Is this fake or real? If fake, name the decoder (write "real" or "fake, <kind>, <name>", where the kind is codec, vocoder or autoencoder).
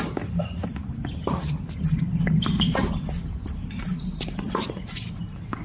real